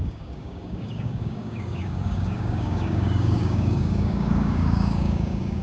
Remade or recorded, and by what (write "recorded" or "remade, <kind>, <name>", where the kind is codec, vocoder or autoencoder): remade, codec, DAC